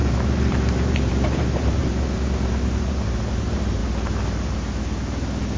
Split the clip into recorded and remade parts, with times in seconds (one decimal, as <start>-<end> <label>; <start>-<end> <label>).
0.0-3.8 remade; 3.8-5.6 recorded